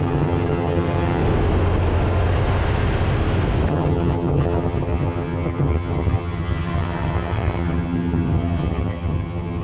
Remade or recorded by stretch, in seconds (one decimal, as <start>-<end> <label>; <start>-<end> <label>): 0.0-1.2 remade; 1.2-3.7 recorded; 3.7-9.6 remade